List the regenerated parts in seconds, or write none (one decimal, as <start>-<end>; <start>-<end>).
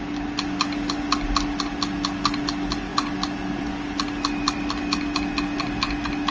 none